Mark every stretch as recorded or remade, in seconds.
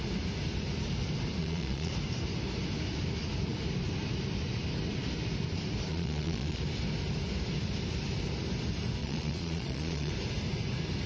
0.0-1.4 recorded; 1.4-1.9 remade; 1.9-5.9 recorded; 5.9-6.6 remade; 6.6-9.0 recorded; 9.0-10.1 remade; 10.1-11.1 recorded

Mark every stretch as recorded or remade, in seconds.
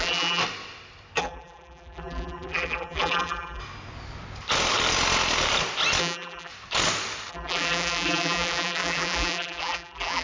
0.0-0.4 remade; 0.4-1.2 recorded; 1.2-3.6 remade; 3.6-6.0 recorded; 6.0-6.5 remade; 6.5-7.3 recorded; 7.3-10.2 remade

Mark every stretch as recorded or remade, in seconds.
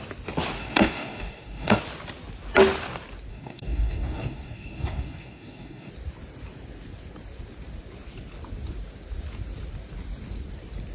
0.0-0.6 recorded; 0.6-1.8 remade; 1.8-3.3 recorded; 3.3-5.9 remade; 5.9-10.9 recorded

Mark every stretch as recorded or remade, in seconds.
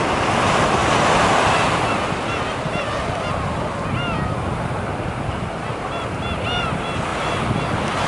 0.0-8.1 recorded